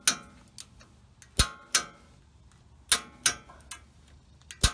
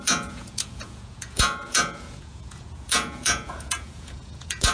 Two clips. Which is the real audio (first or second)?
first